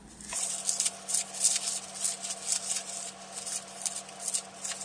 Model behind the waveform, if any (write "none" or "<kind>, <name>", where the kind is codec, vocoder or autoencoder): none